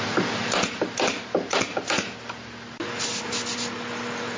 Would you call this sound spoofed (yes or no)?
no